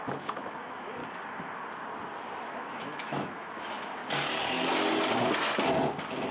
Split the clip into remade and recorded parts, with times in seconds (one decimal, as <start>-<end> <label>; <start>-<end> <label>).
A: 0.0-1.0 remade; 1.0-2.4 recorded; 2.4-4.0 remade; 4.0-6.3 recorded